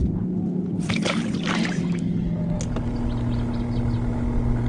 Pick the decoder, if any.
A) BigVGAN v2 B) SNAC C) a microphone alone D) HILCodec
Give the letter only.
C